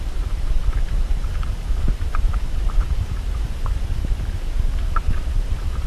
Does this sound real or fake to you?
fake